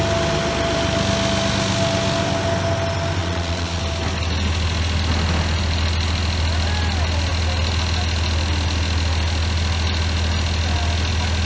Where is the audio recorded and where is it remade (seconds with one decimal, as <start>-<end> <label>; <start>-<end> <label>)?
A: 0.0-3.2 recorded; 3.2-3.8 remade; 3.8-11.4 recorded